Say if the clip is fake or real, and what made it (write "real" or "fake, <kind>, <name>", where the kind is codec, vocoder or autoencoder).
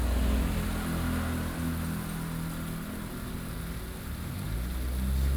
real